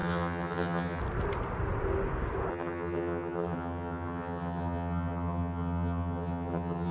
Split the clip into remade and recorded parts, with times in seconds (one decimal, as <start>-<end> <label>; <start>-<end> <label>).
0.0-1.0 remade; 1.0-2.5 recorded; 2.5-6.9 remade